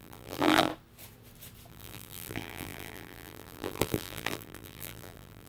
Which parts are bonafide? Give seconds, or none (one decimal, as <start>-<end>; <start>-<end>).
0.7-1.7